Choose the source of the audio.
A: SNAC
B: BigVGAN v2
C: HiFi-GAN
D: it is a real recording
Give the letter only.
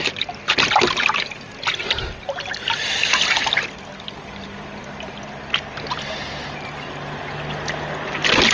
D